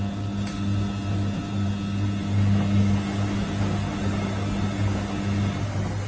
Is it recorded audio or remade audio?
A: recorded